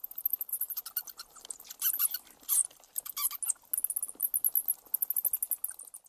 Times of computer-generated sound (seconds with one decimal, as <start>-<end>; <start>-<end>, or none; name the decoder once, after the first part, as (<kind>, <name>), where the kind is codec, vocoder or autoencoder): 0.0-0.8 (vocoder, BigVGAN v2)